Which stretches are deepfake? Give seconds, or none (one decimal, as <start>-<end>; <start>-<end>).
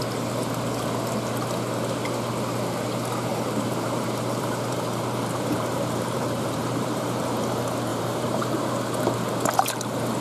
3.3-7.2; 7.9-8.7